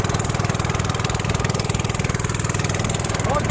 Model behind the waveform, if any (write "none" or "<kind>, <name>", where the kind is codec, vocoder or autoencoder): none